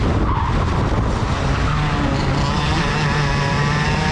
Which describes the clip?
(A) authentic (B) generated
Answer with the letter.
A